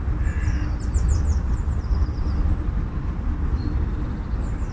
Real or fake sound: real